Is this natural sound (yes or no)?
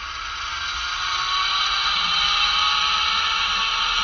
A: yes